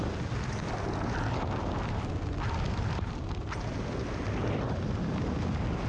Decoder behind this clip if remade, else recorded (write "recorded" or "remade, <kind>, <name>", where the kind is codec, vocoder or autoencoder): recorded